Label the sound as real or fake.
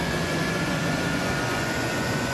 fake